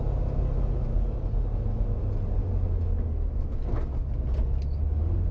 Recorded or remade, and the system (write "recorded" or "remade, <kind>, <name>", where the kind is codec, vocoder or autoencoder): recorded